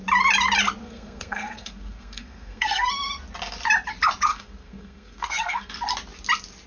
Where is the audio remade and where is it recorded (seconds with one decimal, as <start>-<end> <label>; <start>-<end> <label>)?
0.0-0.8 recorded; 0.8-2.9 remade; 2.9-4.3 recorded; 4.3-5.7 remade; 5.7-6.7 recorded